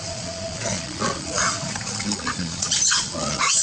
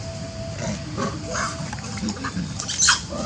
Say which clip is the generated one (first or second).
first